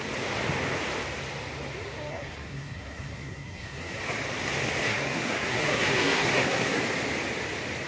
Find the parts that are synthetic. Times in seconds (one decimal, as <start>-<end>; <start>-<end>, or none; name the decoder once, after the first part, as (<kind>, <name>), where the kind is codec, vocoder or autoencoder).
2.1-4.0 (codec, SNAC); 4.9-6.8